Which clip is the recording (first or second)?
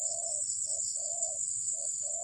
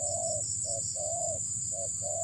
second